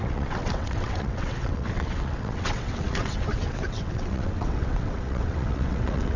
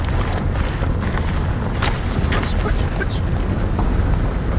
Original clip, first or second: second